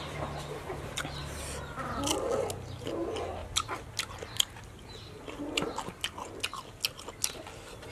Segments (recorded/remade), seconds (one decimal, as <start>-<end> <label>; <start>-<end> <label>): 0.0-7.9 recorded